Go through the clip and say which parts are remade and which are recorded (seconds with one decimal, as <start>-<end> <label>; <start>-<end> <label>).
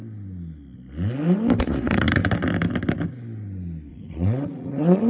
0.0-1.6 recorded; 1.6-2.2 remade; 2.2-3.9 recorded; 3.9-5.1 remade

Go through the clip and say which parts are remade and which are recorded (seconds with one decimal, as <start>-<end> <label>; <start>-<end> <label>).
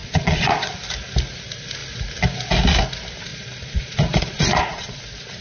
0.0-0.7 remade; 0.7-3.3 recorded; 3.3-5.0 remade; 5.0-5.4 recorded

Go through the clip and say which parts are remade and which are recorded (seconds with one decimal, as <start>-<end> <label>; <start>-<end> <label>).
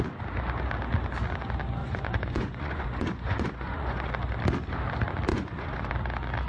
0.0-1.8 recorded; 1.8-4.1 remade; 4.1-5.3 recorded; 5.3-5.9 remade; 5.9-6.5 recorded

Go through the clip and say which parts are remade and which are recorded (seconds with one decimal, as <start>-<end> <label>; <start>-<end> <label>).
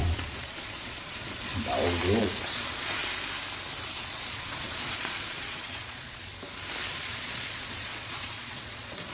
0.0-1.5 remade; 1.5-2.2 recorded; 2.2-3.0 remade; 3.0-3.8 recorded; 3.8-6.2 remade; 6.2-6.9 recorded; 6.9-9.1 remade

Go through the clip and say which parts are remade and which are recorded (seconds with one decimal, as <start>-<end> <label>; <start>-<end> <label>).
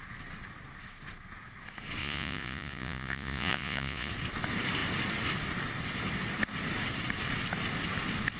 0.0-2.0 recorded; 2.0-4.1 remade; 4.1-8.4 recorded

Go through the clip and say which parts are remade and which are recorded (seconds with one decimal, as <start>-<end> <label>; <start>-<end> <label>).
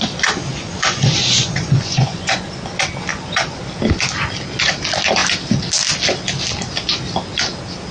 0.0-0.5 recorded; 0.5-2.5 remade; 2.5-3.1 recorded; 3.1-3.6 remade; 3.6-7.9 recorded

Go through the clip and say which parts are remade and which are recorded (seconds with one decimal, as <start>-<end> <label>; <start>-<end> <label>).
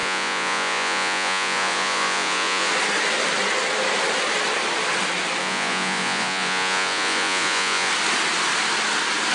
0.0-2.7 remade; 2.7-5.4 recorded; 5.4-7.9 remade; 7.9-9.3 recorded